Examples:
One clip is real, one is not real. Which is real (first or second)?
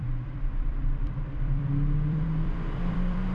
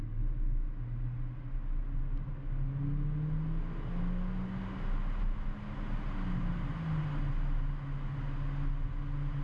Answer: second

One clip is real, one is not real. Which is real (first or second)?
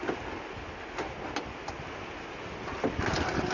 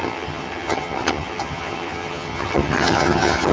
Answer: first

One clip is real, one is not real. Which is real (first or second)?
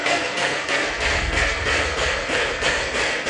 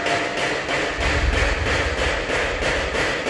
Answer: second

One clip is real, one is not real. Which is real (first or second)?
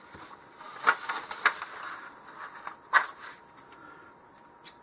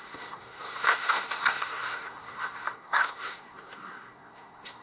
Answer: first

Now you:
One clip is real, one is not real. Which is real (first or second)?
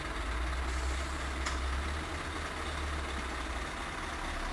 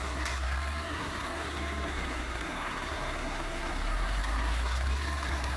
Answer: first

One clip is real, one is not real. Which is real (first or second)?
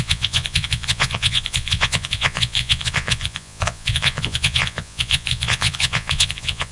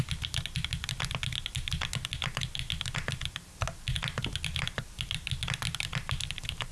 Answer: second